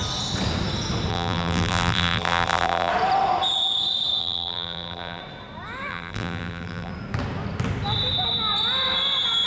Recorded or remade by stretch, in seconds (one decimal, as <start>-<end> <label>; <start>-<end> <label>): 0.0-1.1 recorded; 1.1-2.9 remade; 2.9-4.2 recorded; 4.2-5.2 remade; 5.2-5.9 recorded; 5.9-6.9 remade; 6.9-9.5 recorded